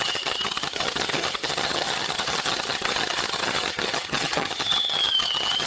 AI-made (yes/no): yes